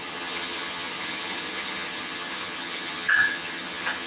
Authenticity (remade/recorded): remade